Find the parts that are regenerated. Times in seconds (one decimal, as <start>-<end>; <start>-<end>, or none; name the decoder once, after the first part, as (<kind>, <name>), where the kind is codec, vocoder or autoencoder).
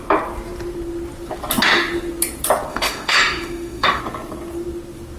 2.7-4.0 (autoencoder, DAC-VAE)